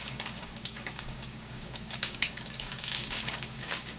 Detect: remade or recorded remade